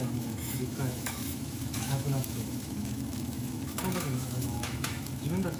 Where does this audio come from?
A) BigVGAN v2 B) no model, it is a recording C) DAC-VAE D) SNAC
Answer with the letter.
C